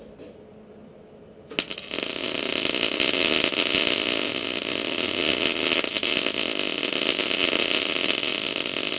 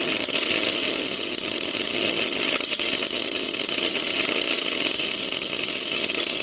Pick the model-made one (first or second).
second